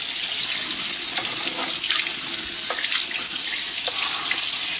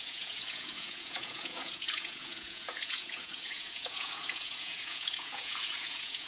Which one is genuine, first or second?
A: first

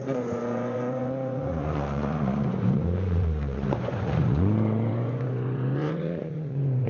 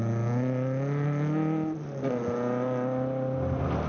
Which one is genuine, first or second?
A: second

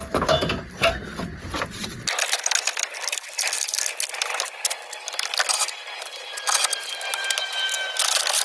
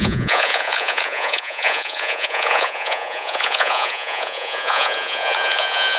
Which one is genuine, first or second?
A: first